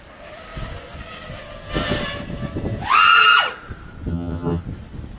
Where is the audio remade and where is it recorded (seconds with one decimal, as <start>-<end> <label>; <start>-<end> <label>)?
0.0-4.1 recorded; 4.1-4.6 remade; 4.6-5.2 recorded